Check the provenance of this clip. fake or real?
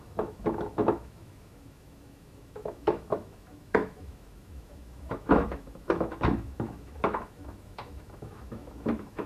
fake